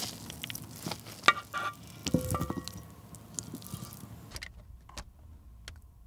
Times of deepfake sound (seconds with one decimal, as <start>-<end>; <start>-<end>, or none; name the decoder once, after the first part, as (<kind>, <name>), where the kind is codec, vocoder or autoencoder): none